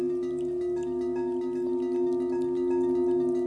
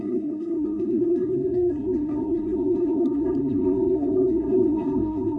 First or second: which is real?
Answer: first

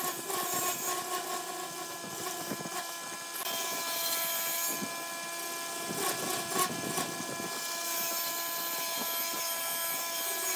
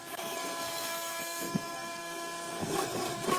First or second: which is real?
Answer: first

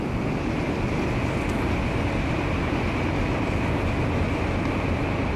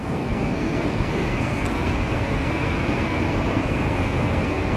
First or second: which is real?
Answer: first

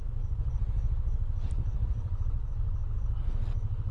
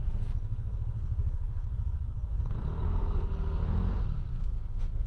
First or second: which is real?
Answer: first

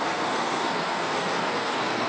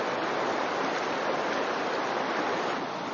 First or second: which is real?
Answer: second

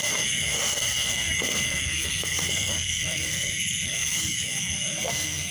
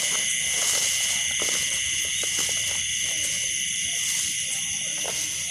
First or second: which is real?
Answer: second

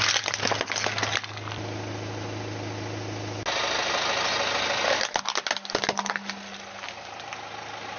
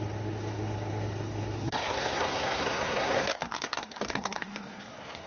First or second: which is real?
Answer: first